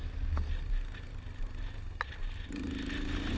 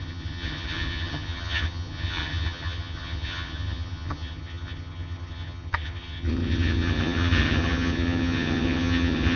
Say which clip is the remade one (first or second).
second